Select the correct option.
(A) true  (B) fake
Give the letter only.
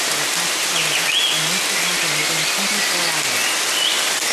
A